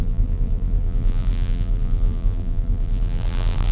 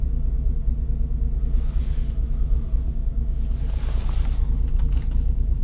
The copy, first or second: first